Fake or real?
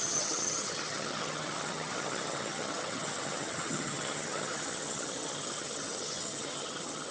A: fake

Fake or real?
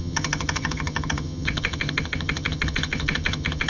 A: fake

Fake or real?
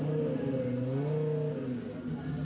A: real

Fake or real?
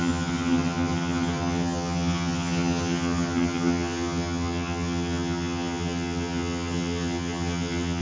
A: fake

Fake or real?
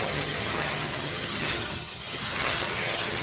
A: fake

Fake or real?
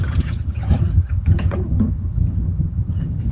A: fake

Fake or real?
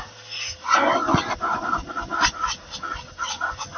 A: real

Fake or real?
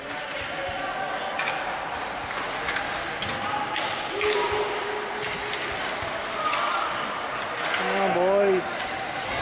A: real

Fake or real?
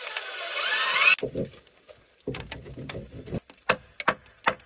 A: real